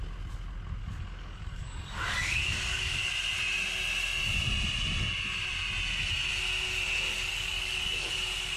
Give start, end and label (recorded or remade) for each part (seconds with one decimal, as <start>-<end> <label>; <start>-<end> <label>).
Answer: 0.0-0.8 recorded; 0.8-3.1 remade; 3.1-7.3 recorded; 7.3-8.1 remade; 8.1-8.6 recorded

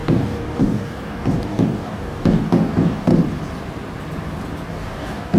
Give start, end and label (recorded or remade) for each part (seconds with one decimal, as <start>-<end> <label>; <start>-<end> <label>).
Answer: 0.0-3.1 remade; 3.1-4.7 recorded; 4.7-5.4 remade

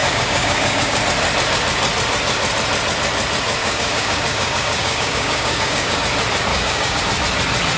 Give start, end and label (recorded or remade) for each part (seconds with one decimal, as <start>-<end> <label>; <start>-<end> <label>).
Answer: 0.0-1.0 remade; 1.0-3.6 recorded; 3.6-6.0 remade; 6.0-6.5 recorded; 6.5-7.0 remade; 7.0-7.8 recorded

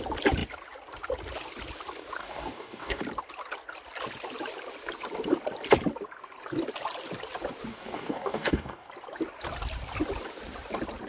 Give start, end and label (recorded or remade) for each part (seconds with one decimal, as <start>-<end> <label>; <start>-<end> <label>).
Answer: 0.0-2.2 recorded; 2.2-3.0 remade; 3.0-7.7 recorded; 7.7-8.9 remade; 8.9-11.1 recorded

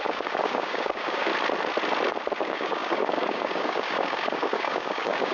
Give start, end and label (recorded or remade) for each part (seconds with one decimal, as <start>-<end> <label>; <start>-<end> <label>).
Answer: 0.0-1.3 remade; 1.3-2.4 recorded; 2.4-5.3 remade